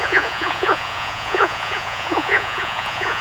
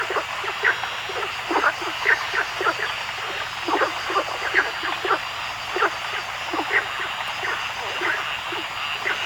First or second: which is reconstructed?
first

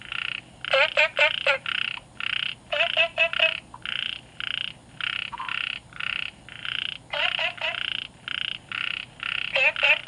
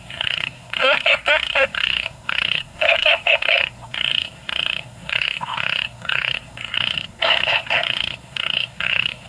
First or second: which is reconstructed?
second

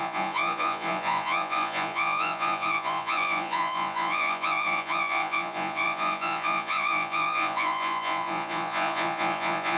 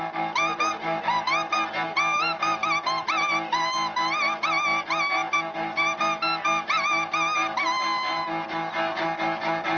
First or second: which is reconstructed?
first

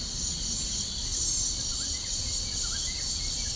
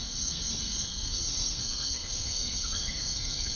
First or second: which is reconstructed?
second